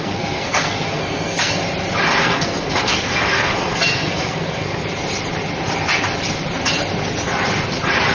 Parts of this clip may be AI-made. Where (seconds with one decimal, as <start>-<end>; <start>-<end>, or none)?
0.0-1.6; 2.2-4.8